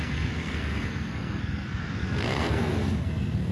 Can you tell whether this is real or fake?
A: fake